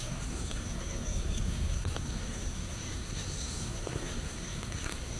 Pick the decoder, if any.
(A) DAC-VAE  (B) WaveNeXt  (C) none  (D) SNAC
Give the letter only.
D